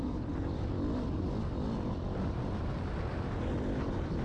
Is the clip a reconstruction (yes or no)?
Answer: no